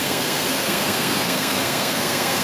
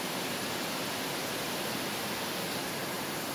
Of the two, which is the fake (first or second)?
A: first